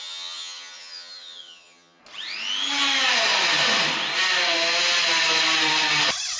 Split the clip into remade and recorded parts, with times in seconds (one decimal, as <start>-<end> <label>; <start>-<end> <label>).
0.0-2.0 remade; 2.0-6.4 recorded